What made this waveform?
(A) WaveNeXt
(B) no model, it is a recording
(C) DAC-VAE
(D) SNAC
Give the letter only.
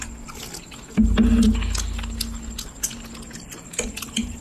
B